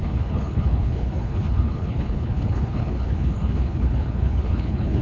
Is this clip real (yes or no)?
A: no